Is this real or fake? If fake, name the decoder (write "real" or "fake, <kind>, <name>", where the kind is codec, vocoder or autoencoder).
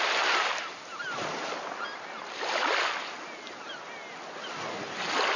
real